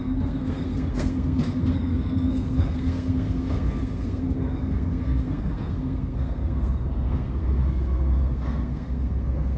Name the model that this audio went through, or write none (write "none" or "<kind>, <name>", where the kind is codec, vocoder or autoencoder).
codec, SNAC